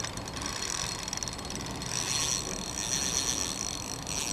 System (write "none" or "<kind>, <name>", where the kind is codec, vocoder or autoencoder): none